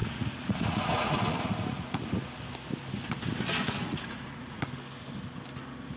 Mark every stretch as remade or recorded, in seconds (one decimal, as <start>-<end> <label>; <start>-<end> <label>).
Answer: 0.0-2.2 remade; 2.2-3.8 recorded; 3.8-4.6 remade; 4.6-6.0 recorded